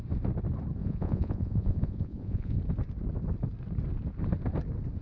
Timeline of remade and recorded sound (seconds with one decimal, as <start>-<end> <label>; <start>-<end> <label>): 0.0-0.8 recorded; 0.8-2.6 remade; 2.6-5.0 recorded